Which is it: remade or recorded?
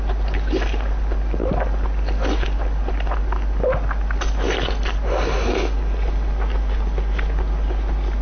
recorded